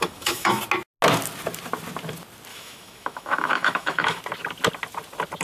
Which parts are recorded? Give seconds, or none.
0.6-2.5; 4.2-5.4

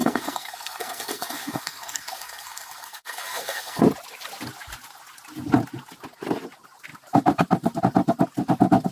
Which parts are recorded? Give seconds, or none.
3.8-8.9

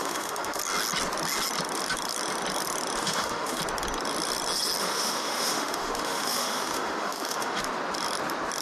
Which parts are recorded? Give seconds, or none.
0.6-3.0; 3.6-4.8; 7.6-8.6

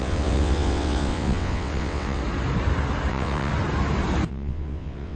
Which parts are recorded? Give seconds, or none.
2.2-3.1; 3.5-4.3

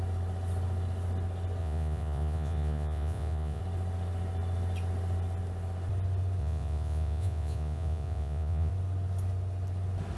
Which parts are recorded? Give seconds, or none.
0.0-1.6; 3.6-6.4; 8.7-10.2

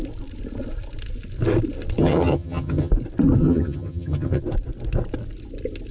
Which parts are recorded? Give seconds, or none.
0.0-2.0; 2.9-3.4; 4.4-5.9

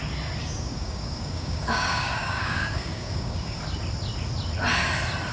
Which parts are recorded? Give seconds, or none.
0.0-0.4; 3.6-5.3

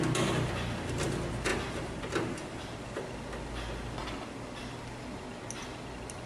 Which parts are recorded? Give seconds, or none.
0.0-1.5; 3.0-6.3